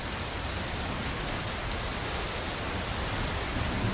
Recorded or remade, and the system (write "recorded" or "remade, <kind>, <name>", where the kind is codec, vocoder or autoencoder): recorded